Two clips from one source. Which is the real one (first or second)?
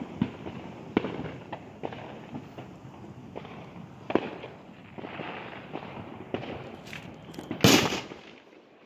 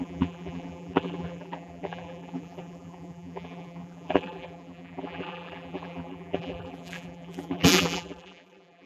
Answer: first